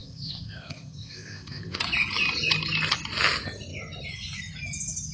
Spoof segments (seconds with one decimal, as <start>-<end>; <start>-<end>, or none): 0.0-1.8